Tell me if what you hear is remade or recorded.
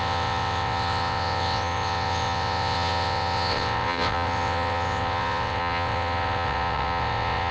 remade